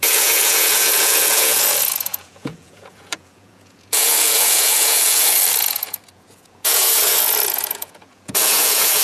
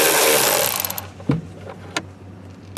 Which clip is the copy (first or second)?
first